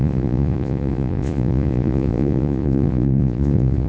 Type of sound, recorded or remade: remade